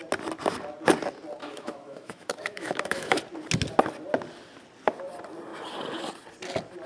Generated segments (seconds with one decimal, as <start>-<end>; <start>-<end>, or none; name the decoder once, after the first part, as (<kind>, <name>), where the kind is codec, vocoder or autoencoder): 1.4-3.2 (autoencoder, DAC-VAE)